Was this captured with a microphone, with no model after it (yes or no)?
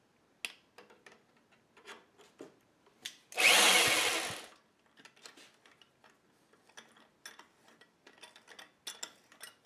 yes